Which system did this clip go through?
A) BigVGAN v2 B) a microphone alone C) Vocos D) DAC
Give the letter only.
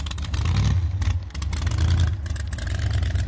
B